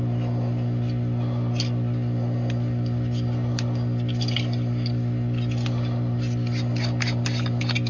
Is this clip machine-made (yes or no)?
no